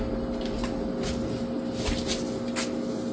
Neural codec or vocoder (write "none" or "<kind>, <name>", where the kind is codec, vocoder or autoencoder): none